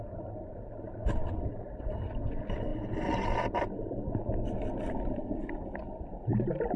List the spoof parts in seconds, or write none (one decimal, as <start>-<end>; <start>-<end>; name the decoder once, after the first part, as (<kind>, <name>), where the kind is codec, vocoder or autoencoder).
none